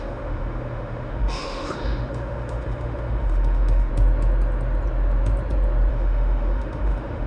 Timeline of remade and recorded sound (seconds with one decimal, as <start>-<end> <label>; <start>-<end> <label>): 0.0-3.9 remade; 3.9-5.9 recorded; 5.9-7.3 remade